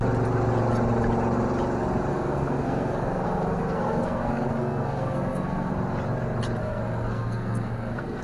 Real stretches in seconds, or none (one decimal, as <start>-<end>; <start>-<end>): 0.0-2.1; 5.7-6.6